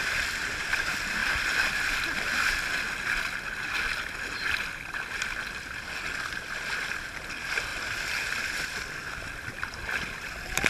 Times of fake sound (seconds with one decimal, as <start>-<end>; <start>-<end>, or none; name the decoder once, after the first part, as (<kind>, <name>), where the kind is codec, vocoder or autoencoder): 0.0-1.2 (vocoder, BigVGAN v2); 6.1-10.7

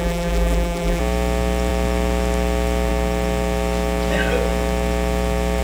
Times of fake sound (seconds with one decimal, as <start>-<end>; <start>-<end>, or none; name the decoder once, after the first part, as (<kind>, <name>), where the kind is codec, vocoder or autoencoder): 0.0-1.0 (vocoder, BigVGAN v2)